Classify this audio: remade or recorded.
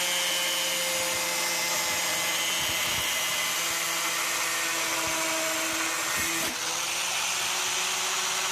recorded